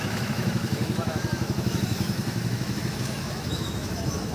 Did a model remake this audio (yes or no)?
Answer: yes